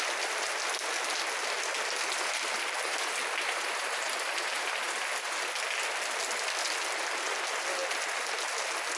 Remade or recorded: recorded